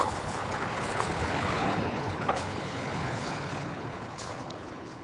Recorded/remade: remade